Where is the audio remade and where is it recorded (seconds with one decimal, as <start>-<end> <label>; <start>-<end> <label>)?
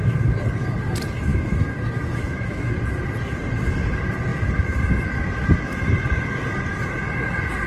0.0-1.3 recorded; 1.3-2.8 remade; 2.8-7.7 recorded